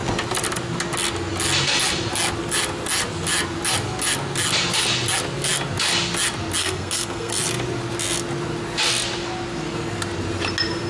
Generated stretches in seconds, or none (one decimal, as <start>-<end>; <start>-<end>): 6.6-7.3